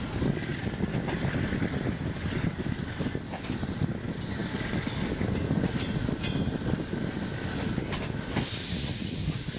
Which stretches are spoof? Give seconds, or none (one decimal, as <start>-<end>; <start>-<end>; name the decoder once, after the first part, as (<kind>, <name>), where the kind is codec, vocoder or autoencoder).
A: 8.6-9.2 (vocoder, Vocos)

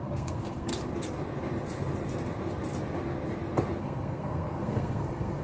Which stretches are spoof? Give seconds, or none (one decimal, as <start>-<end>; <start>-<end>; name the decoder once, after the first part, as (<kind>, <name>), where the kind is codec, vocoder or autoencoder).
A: 0.0-0.7 (codec, SNAC); 3.8-5.4

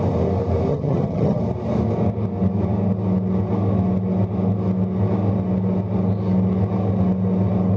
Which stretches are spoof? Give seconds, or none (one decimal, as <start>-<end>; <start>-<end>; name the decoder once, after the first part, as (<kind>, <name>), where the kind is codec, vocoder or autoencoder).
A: 0.7-1.4 (vocoder, HiFi-GAN)

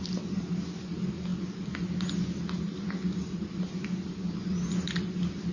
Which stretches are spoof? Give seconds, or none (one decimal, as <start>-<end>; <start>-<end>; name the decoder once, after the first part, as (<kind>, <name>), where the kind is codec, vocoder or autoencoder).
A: none

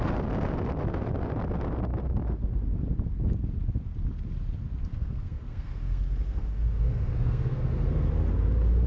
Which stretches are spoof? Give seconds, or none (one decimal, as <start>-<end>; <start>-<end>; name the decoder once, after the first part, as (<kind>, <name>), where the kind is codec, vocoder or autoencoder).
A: 4.9-8.1 (codec, SNAC)